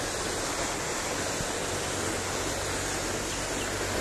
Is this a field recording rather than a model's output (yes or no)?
yes